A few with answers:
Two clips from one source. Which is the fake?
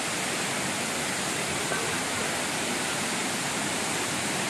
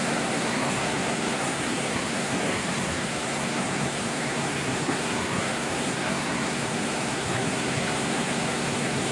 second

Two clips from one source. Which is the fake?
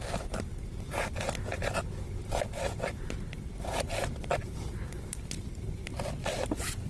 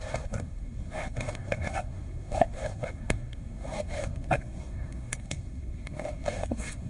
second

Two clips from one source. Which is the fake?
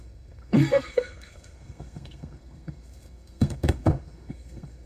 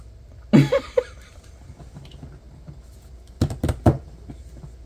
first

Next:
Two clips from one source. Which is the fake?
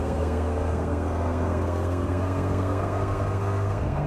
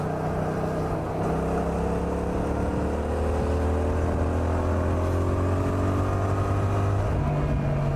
first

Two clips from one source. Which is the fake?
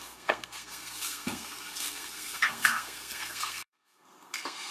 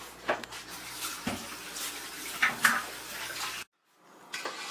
first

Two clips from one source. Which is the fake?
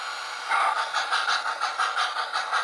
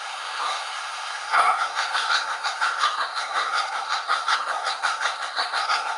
second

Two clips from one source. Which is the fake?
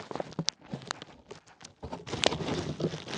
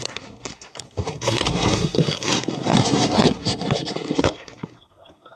second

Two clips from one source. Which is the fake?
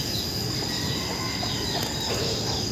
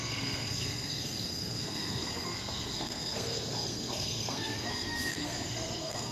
second